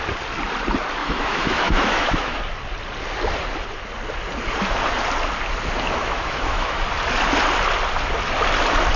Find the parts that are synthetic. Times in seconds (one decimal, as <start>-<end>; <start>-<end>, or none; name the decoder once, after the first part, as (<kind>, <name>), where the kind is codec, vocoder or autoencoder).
1.0-2.4 (autoencoder, DAC-VAE); 6.0-6.8